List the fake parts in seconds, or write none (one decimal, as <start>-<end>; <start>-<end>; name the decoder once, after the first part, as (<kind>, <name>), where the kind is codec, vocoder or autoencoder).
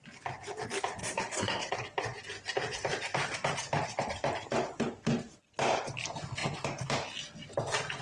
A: 1.0-1.7 (codec, SNAC)